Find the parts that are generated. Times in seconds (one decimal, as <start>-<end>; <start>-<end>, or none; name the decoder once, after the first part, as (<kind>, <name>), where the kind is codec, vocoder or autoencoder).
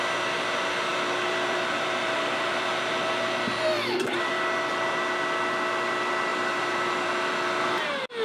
0.9-4.3 (vocoder, BigVGAN v2); 6.3-7.7